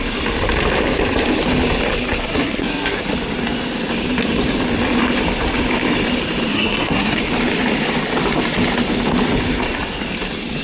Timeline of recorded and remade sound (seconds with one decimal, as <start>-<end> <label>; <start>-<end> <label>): 0.0-2.2 recorded; 2.2-3.0 remade; 3.0-6.5 recorded; 6.5-7.2 remade; 7.2-10.6 recorded